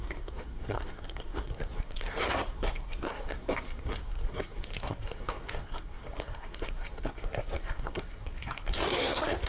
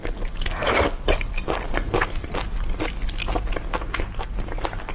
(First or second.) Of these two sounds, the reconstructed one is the first